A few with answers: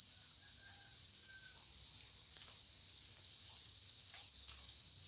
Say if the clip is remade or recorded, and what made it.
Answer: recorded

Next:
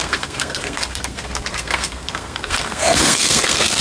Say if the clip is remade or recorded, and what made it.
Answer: remade, codec, SNAC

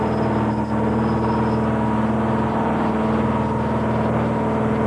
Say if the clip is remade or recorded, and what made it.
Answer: recorded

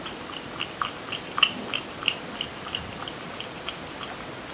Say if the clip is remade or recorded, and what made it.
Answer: recorded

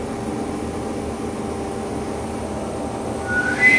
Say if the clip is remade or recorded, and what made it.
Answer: recorded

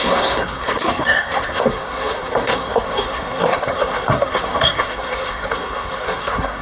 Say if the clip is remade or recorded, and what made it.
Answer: remade, codec, SNAC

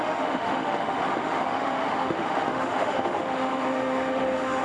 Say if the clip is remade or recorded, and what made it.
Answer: remade, autoencoder, DAC-VAE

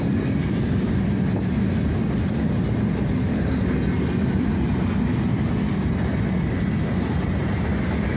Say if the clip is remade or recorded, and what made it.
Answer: recorded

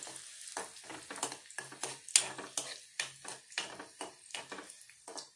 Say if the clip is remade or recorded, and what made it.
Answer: recorded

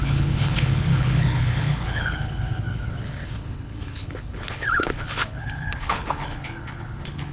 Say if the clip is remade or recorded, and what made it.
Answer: remade, codec, HILCodec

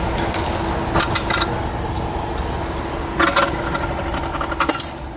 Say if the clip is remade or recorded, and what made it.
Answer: recorded